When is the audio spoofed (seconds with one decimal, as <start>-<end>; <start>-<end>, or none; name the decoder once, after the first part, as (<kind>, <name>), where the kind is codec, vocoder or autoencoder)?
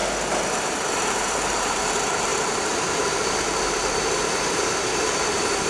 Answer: 0.0-5.7 (vocoder, BigVGAN v2)